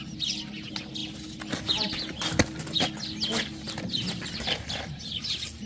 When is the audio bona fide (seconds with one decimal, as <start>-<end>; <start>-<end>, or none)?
0.0-5.7